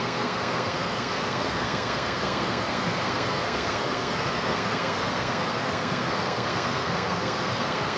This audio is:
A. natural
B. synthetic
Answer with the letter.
B